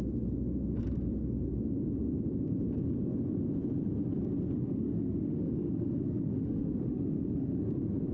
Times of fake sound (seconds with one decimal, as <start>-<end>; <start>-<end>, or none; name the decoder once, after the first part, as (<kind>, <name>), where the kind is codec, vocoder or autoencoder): 4.6-7.6 (autoencoder, DAC-VAE)